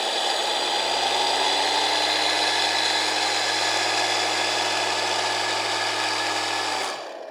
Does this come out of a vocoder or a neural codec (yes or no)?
no